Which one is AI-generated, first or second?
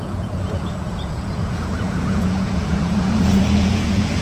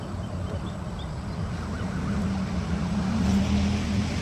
first